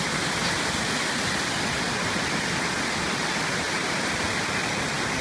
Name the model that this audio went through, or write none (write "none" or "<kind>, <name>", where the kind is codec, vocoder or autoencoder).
none